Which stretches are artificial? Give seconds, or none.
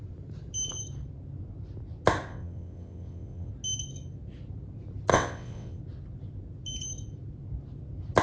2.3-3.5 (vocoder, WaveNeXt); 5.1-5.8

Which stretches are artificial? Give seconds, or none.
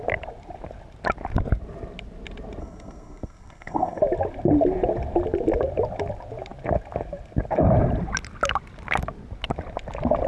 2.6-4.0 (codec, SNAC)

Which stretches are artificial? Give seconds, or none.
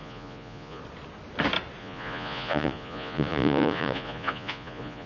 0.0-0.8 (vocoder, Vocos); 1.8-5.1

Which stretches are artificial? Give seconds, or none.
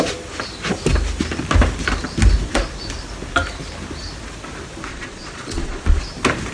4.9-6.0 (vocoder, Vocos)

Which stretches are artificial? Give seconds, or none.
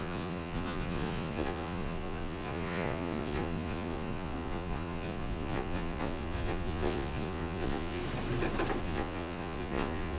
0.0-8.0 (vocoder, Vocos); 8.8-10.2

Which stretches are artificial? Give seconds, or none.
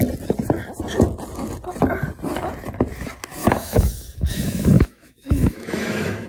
3.4-6.3 (autoencoder, DAC-VAE)